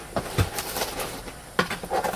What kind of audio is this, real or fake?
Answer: real